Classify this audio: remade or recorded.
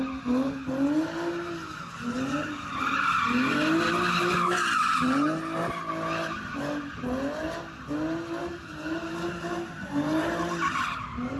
recorded